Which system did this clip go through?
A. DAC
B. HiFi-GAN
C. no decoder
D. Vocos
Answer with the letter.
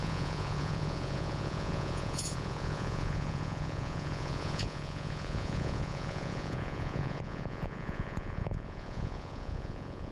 D